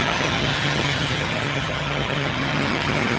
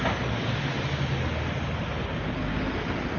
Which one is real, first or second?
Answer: second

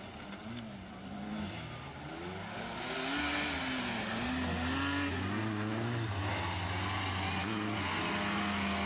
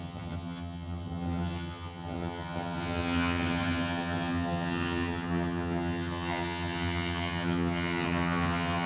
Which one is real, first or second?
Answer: first